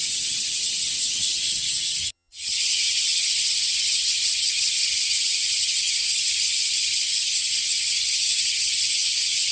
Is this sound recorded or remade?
remade